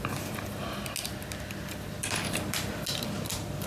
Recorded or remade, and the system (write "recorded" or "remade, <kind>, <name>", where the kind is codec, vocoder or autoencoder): recorded